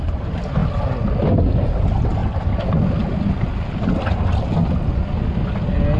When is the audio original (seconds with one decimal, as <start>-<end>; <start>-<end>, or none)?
0.0-6.0